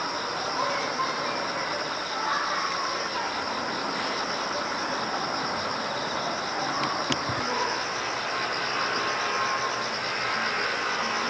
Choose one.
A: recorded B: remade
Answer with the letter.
A